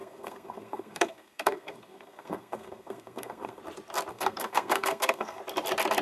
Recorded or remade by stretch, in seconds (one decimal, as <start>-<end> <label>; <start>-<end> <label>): 0.0-3.6 remade; 3.6-4.1 recorded; 4.1-5.4 remade; 5.4-6.0 recorded